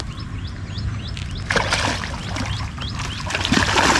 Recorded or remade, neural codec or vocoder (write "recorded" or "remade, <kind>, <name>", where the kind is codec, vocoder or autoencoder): recorded